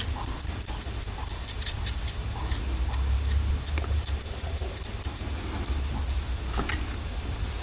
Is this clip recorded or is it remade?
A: recorded